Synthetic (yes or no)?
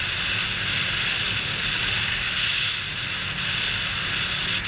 no